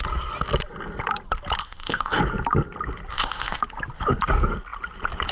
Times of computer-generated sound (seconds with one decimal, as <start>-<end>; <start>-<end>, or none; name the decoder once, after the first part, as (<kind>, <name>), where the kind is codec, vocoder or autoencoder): 1.6-2.2 (codec, ZipCodec); 3.1-3.6

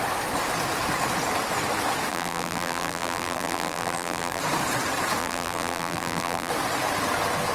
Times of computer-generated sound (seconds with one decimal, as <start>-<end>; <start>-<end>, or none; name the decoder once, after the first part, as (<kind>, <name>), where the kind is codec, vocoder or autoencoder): 2.1-4.4 (vocoder, BigVGAN v2); 5.2-6.5

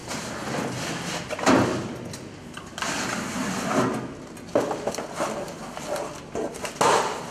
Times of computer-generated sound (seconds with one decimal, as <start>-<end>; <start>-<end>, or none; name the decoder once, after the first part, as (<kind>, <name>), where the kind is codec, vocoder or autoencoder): none

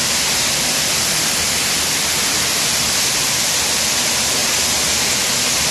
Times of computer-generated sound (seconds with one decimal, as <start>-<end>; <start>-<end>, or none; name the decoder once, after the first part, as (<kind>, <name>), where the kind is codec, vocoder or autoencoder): none

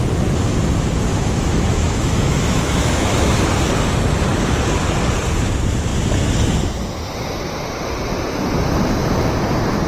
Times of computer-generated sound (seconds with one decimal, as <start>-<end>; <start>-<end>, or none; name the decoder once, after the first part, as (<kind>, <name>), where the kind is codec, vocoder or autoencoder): 1.1-3.3 (autoencoder, DAC-VAE)